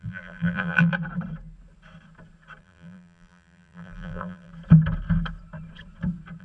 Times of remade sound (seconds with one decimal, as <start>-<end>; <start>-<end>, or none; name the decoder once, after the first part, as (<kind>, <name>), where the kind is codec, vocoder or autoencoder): 0.0-0.9 (vocoder, BigVGAN v2); 2.6-4.5